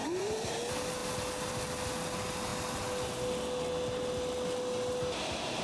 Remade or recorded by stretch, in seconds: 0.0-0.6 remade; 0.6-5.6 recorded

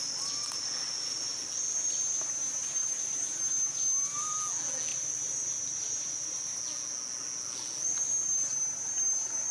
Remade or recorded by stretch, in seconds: 0.0-2.8 recorded; 2.8-3.4 remade; 3.4-4.9 recorded; 4.9-6.6 remade; 6.6-9.5 recorded

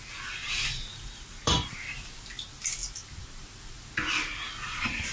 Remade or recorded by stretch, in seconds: 0.0-0.4 recorded; 0.4-1.7 remade; 1.7-5.1 recorded

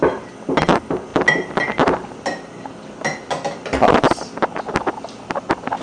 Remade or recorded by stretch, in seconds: 0.0-5.8 recorded

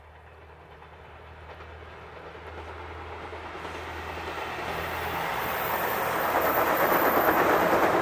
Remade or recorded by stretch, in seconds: 0.0-5.3 recorded; 5.3-6.0 remade; 6.0-8.0 recorded